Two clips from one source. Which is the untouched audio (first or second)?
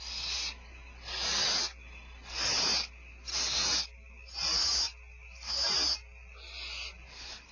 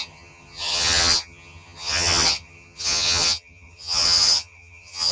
first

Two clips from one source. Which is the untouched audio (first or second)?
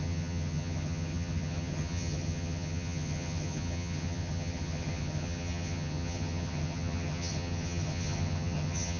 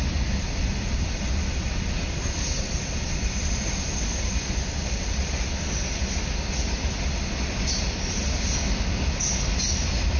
second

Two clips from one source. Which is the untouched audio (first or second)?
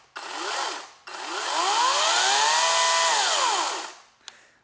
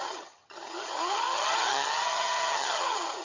first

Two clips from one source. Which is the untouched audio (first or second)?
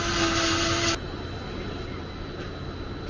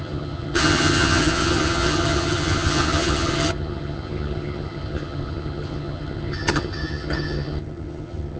first